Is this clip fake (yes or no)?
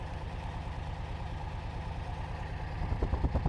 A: no